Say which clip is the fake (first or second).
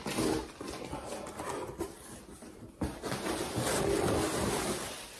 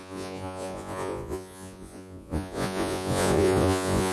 second